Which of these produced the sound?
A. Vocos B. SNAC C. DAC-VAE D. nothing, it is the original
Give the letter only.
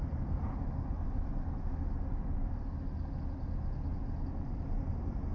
D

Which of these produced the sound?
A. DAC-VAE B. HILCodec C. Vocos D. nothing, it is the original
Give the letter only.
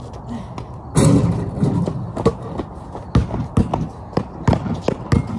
D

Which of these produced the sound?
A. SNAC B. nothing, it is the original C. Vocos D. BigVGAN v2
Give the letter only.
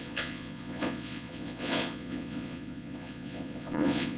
C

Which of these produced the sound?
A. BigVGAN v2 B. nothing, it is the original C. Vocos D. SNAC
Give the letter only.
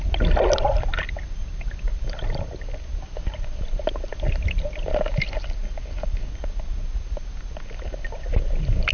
B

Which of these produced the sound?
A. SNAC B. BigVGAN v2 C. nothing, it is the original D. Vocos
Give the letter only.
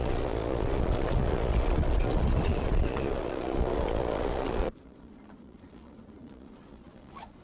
D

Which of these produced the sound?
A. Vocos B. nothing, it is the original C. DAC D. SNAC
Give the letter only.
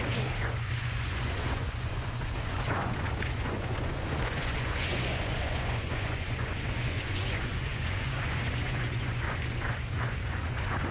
A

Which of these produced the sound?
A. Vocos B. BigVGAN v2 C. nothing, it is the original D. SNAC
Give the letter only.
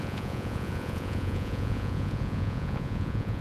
A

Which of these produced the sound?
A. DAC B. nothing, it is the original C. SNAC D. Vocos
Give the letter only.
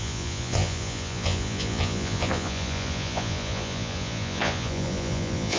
D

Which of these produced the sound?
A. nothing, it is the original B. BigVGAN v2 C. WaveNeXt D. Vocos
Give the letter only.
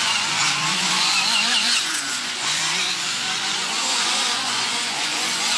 D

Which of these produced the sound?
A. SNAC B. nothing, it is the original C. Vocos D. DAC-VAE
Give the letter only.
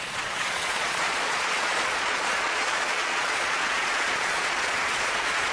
C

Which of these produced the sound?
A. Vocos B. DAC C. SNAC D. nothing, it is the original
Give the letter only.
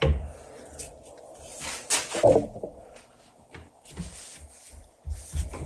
D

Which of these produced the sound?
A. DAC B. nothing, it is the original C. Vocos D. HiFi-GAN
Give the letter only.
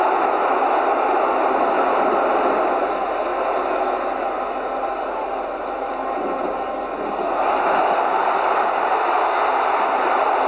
B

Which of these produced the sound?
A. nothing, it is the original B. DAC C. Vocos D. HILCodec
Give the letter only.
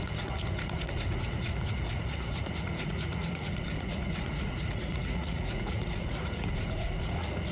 C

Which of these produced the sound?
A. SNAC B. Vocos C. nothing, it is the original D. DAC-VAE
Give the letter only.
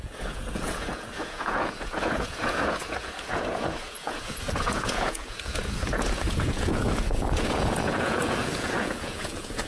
B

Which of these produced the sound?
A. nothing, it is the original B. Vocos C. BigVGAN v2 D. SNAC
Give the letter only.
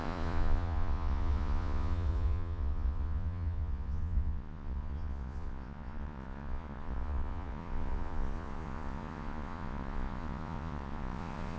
B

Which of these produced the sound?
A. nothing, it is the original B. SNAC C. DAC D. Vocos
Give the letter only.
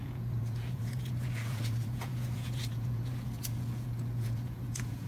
D